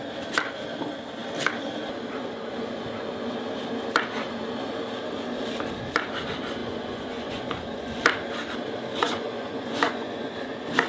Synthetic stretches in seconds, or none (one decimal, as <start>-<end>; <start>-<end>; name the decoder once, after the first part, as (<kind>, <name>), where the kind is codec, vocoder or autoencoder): 6.6-8.0 (vocoder, Vocos); 9.0-10.3

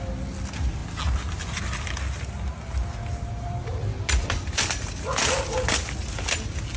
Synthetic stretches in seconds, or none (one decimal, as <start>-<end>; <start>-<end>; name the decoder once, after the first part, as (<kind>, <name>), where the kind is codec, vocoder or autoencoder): none